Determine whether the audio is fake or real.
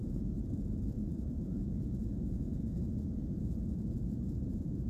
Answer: fake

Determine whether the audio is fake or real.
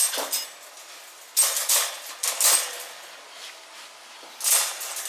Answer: real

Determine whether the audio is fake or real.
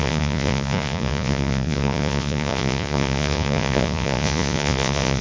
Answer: fake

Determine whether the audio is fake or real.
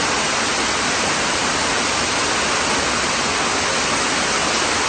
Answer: real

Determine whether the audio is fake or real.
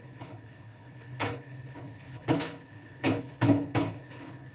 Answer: fake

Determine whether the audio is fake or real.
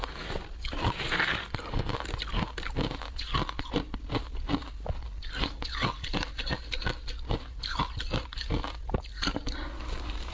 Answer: real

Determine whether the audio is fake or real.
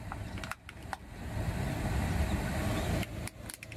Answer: real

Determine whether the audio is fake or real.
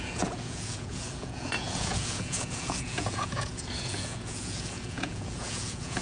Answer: fake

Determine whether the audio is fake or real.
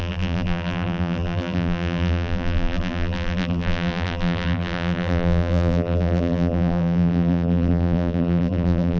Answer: fake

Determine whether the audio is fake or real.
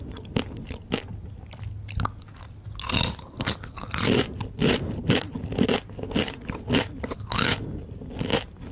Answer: real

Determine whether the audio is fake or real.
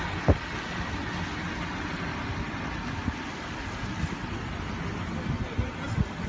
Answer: real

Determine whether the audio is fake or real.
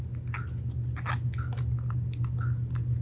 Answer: real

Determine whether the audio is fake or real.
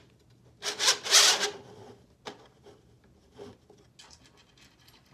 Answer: real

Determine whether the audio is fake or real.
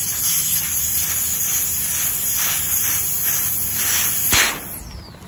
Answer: real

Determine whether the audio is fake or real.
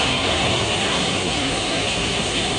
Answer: fake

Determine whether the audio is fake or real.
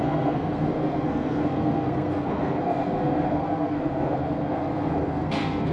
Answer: fake